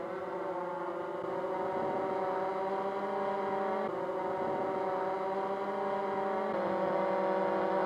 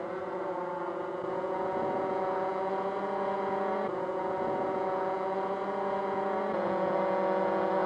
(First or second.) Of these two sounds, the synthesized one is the second